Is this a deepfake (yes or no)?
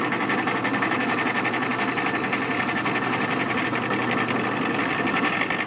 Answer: no